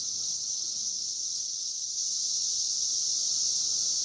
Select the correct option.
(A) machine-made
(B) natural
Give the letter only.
B